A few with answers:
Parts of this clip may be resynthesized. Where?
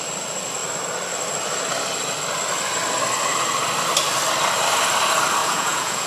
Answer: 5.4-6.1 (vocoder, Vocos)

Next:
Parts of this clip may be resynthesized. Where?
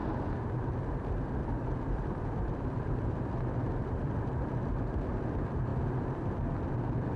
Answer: 1.4-4.5 (vocoder, BigVGAN v2)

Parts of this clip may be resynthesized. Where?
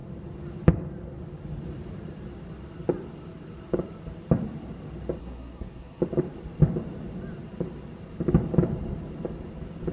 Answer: 5.2-6.0 (codec, SNAC)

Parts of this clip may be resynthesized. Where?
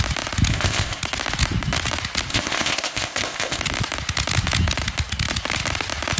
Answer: 0.5-1.0 (codec, ZipCodec); 2.3-3.6